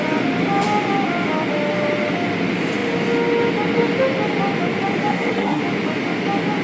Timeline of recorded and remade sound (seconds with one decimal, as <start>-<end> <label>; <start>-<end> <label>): 0.0-5.1 recorded; 5.1-5.6 remade; 5.6-6.6 recorded